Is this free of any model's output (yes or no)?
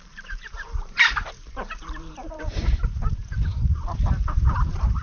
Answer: no